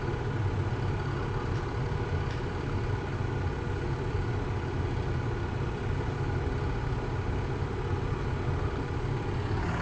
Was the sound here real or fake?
real